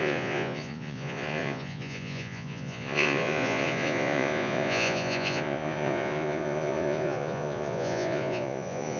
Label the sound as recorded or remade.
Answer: remade